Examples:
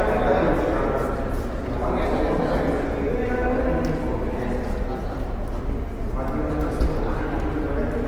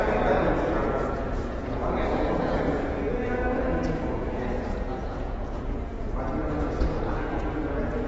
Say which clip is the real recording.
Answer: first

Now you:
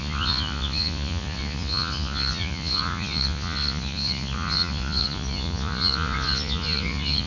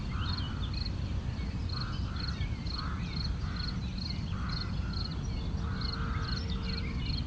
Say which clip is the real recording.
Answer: second